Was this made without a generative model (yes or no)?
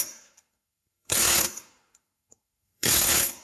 no